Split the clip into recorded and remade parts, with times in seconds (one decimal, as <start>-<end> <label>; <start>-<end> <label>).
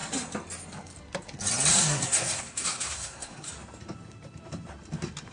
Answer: 0.0-1.7 recorded; 1.7-3.5 remade; 3.5-5.3 recorded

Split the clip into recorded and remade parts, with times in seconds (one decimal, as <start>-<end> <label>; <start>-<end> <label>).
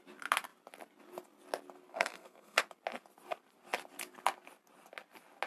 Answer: 0.0-1.9 recorded; 1.9-2.6 remade; 2.6-5.5 recorded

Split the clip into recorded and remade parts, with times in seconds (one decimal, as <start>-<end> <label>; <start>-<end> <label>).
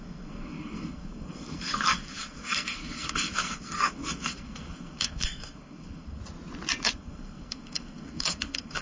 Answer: 0.0-6.2 remade; 6.2-6.9 recorded; 6.9-8.8 remade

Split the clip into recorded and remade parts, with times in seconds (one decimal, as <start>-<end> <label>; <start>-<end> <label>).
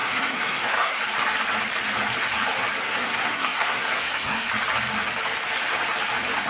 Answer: 0.0-1.0 remade; 1.0-2.8 recorded; 2.8-4.5 remade; 4.5-6.5 recorded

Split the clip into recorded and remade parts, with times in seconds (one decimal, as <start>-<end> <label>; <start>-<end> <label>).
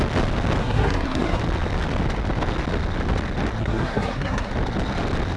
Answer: 0.0-0.6 recorded; 0.6-1.4 remade; 1.4-3.6 recorded; 3.6-4.5 remade; 4.5-5.4 recorded